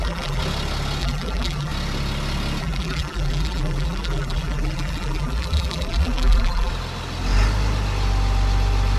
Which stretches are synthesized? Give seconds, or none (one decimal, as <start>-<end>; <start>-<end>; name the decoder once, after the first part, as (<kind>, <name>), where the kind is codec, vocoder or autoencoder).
0.0-0.4 (vocoder, BigVGAN v2); 1.0-1.7; 2.6-6.7